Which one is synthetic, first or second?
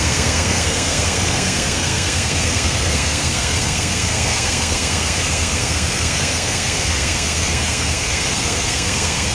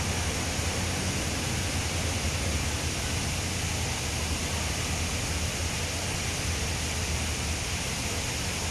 first